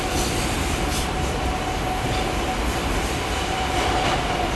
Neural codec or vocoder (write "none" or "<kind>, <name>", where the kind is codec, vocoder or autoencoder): none